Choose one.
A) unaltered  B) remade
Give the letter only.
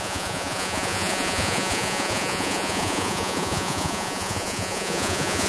B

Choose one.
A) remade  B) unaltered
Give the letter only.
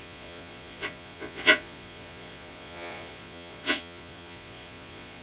A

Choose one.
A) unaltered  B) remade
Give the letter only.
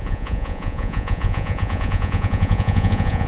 B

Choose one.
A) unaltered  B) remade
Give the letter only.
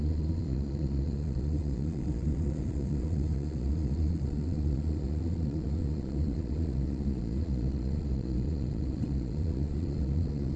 B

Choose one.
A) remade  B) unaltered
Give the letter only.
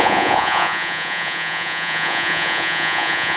A